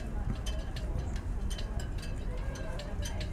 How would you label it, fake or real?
real